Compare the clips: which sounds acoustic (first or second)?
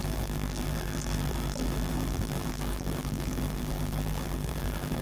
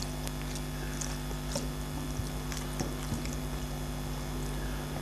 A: second